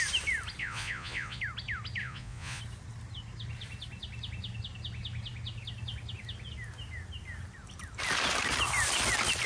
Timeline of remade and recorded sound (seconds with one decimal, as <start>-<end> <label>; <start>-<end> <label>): 0.0-0.6 recorded; 0.6-1.4 remade; 1.4-2.0 recorded; 2.0-2.6 remade; 2.6-9.5 recorded